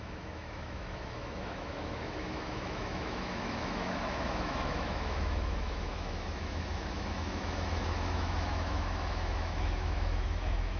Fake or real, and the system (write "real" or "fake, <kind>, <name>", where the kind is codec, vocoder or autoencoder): fake, autoencoder, DAC-VAE